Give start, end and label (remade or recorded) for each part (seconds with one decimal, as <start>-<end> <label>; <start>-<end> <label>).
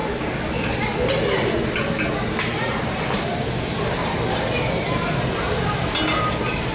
0.0-2.4 recorded; 2.4-6.7 remade